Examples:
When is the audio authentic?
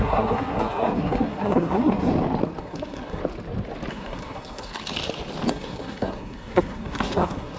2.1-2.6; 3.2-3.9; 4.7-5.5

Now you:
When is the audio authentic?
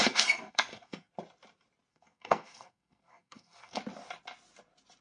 1.1-1.9; 3.8-5.0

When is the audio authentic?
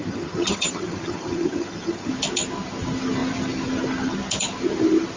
2.1-5.2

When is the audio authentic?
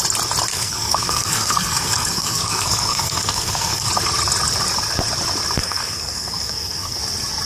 0.0-0.5; 3.9-5.6; 7.0-7.5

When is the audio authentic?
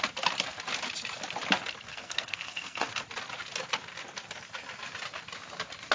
0.0-1.9; 2.9-5.9